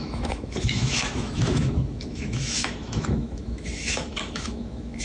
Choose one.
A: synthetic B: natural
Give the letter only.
A